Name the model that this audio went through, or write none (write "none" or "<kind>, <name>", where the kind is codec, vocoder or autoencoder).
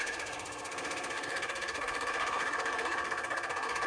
codec, SNAC